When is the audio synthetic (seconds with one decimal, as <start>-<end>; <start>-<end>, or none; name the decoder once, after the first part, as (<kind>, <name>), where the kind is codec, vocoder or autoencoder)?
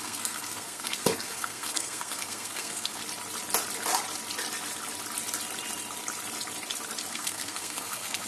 0.0-3.0 (codec, SNAC); 7.1-8.3